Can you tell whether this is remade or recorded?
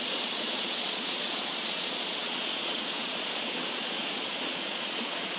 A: remade